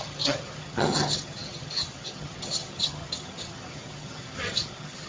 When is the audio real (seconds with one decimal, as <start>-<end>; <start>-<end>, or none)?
none